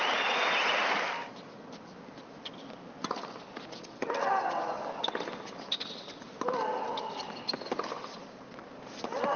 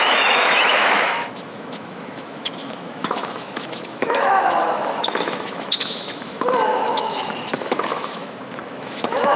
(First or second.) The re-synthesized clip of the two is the second